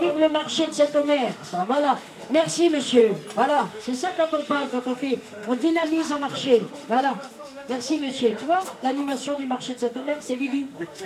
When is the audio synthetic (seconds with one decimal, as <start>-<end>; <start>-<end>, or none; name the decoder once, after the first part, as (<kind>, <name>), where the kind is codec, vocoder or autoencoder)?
0.0-3.0 (autoencoder, DAC-VAE); 3.5-11.1